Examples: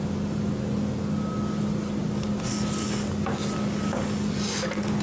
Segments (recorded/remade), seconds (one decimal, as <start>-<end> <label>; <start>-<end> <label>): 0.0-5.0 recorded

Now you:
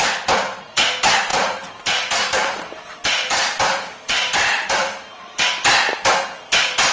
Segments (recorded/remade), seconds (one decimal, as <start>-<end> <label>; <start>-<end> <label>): 0.0-1.3 recorded; 1.3-5.4 remade; 5.4-6.9 recorded

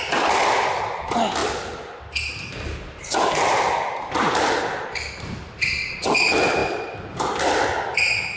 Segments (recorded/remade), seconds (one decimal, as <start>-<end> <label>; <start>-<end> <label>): 0.0-8.4 recorded